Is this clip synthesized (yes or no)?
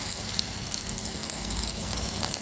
yes